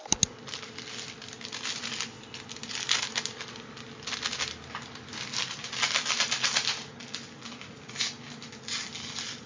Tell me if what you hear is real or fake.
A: real